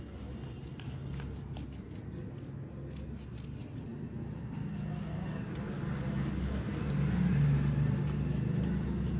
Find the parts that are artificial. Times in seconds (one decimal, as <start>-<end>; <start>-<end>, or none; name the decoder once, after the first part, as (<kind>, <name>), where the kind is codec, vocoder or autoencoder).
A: none